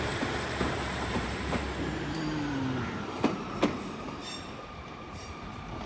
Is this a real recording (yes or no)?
no